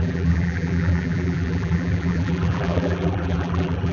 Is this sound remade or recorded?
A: remade